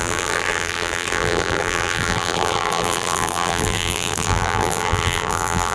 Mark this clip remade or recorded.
remade